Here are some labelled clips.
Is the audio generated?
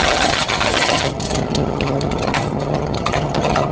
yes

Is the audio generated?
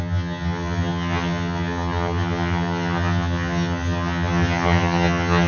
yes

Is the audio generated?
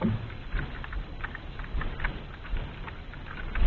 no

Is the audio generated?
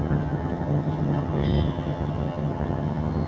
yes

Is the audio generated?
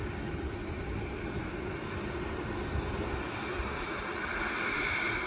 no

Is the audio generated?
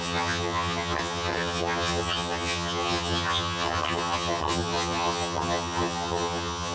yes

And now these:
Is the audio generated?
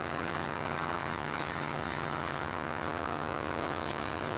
yes